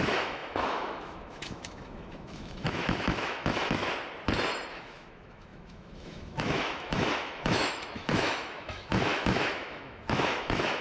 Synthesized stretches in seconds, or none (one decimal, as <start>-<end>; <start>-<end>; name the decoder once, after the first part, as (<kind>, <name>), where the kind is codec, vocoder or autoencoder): 0.0-3.8 (autoencoder, DAC-VAE); 4.7-10.8